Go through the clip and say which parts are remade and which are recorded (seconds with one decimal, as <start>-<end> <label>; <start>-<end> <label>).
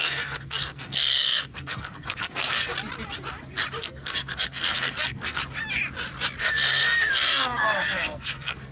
0.0-2.7 remade; 2.7-3.8 recorded; 3.8-5.4 remade; 5.4-6.4 recorded; 6.4-8.7 remade